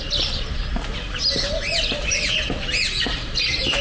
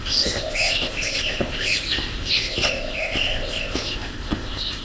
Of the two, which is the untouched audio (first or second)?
first